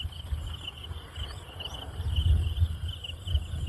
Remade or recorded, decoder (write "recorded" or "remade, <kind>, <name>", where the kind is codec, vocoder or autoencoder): recorded